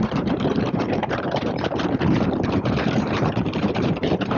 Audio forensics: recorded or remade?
remade